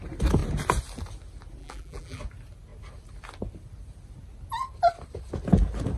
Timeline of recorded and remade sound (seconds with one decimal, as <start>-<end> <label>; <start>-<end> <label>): 0.0-1.6 recorded; 1.6-2.2 remade; 2.2-6.0 recorded